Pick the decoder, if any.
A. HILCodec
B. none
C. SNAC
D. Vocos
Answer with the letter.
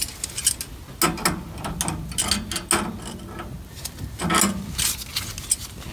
B